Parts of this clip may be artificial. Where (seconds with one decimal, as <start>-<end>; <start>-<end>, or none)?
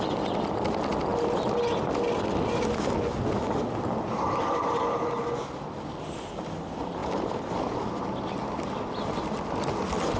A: none